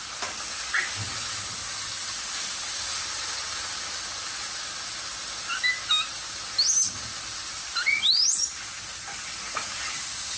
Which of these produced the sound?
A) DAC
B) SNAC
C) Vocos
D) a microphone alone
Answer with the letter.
D